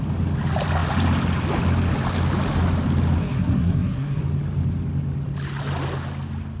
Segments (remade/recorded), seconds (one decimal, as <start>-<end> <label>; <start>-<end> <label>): 0.0-3.2 recorded; 3.2-4.2 remade; 4.2-6.6 recorded